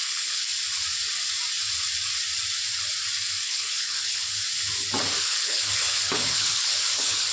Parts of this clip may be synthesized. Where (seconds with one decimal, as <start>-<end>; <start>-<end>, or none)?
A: 0.0-0.5; 3.4-4.4; 5.2-7.3